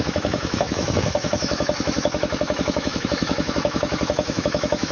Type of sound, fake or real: fake